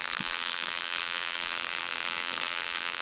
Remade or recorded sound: remade